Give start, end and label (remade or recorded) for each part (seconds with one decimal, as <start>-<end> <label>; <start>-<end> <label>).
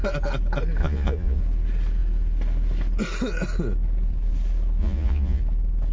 0.0-0.8 recorded; 0.8-1.4 remade; 1.4-4.8 recorded; 4.8-5.4 remade; 5.4-5.9 recorded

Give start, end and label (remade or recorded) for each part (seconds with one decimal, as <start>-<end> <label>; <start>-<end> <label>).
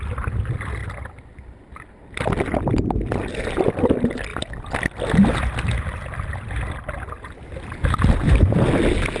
0.0-9.2 recorded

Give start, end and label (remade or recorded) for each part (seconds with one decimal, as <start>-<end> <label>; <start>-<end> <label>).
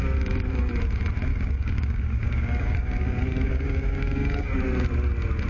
0.0-1.3 recorded; 1.3-4.5 remade; 4.5-5.5 recorded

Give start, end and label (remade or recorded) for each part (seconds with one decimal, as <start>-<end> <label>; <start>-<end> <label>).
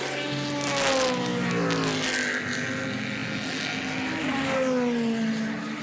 0.0-5.8 recorded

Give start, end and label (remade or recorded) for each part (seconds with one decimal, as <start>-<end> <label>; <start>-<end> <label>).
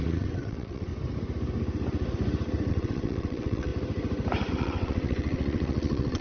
0.0-0.9 remade; 0.9-2.7 recorded; 2.7-3.7 remade; 3.7-4.5 recorded; 4.5-6.2 remade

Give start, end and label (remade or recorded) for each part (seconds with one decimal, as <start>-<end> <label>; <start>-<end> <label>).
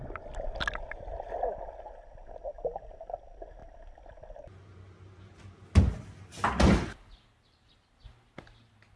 0.0-9.0 recorded